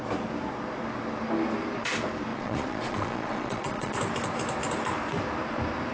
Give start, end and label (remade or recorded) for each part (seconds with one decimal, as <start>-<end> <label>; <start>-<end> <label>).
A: 0.0-2.3 recorded; 2.3-4.0 remade; 4.0-5.9 recorded